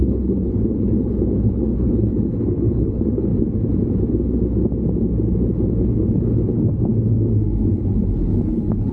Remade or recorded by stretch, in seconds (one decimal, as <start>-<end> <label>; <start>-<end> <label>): 0.0-3.3 remade; 3.3-5.8 recorded; 5.8-6.9 remade; 6.9-7.7 recorded; 7.7-8.9 remade